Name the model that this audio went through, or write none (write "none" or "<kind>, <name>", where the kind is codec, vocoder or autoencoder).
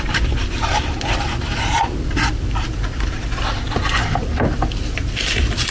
vocoder, BigVGAN v2